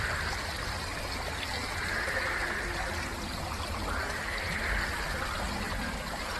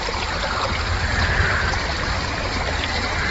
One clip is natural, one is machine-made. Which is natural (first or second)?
first